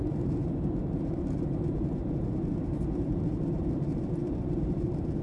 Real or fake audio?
fake